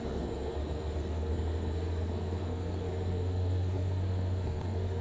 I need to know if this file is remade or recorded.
remade